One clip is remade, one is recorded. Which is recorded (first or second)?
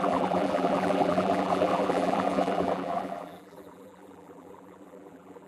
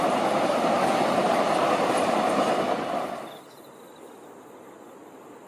second